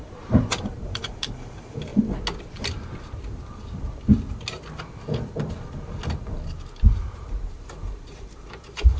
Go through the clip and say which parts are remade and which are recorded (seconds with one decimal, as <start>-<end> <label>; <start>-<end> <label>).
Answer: 0.0-1.9 remade; 1.9-6.9 recorded; 6.9-9.0 remade